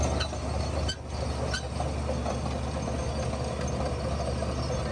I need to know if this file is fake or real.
real